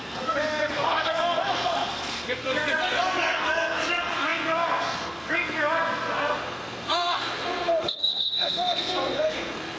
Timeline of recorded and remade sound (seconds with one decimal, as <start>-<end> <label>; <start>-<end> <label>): 0.0-9.8 remade